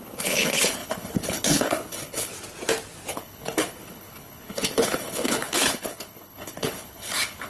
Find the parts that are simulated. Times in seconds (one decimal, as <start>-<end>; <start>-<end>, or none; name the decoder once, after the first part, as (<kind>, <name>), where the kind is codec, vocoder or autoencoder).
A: 0.0-2.3 (codec, HILCodec); 3.1-7.5